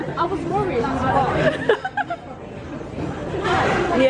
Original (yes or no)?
no